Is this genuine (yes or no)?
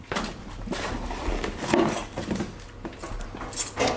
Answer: yes